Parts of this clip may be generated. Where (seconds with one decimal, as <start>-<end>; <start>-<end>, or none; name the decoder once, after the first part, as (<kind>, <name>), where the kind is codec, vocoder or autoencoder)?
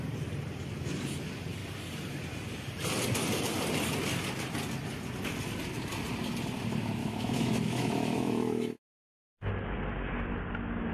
7.0-9.5 (autoencoder, DAC-VAE)